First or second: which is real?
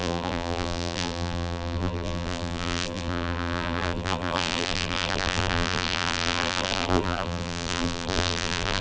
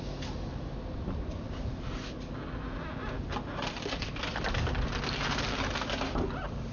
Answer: second